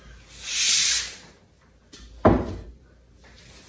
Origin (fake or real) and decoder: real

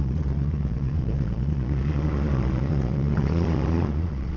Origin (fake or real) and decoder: fake, vocoder, Vocos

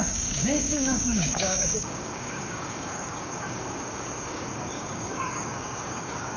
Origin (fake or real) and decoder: fake, codec, DAC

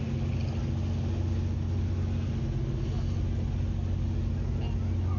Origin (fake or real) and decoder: real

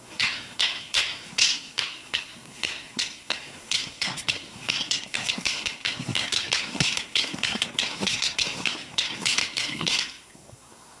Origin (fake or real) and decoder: fake, codec, SNAC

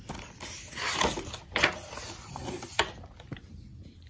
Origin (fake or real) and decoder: real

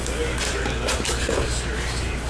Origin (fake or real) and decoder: real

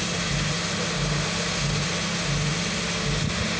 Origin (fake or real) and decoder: real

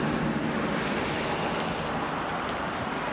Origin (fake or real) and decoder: real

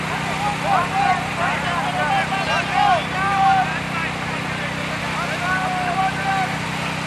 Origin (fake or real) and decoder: real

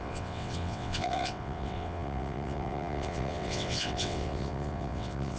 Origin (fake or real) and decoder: fake, vocoder, WaveNeXt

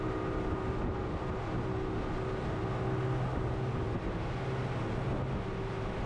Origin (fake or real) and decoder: real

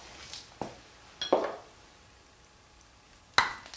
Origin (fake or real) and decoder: real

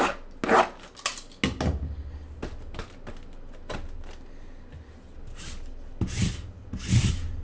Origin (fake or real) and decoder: real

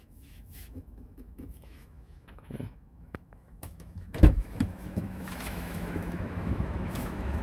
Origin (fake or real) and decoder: fake, autoencoder, DAC-VAE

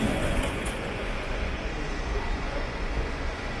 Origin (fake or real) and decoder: fake, vocoder, Vocos